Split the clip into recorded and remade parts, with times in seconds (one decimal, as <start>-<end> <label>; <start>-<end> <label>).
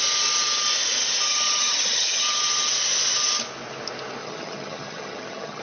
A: 0.0-1.3 recorded; 1.3-2.4 remade; 2.4-4.2 recorded; 4.2-5.6 remade